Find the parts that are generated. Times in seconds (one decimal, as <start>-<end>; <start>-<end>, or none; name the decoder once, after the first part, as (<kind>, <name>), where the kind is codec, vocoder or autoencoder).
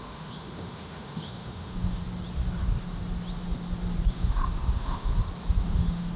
0.0-2.0 (autoencoder, DAC-VAE); 4.1-5.1; 5.6-6.2